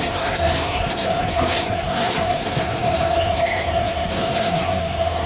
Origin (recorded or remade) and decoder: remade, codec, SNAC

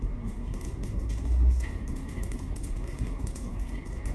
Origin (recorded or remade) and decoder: remade, codec, SNAC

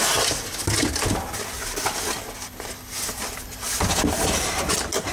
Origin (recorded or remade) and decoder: recorded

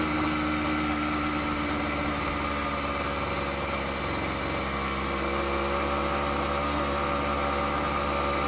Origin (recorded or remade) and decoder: recorded